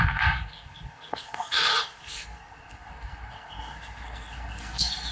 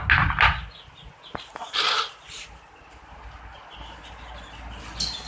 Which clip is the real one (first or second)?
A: second